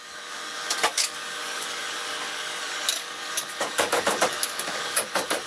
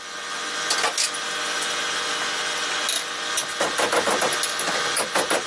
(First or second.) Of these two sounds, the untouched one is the second